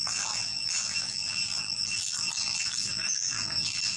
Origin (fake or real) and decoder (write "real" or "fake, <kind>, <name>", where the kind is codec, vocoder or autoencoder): fake, vocoder, BigVGAN v2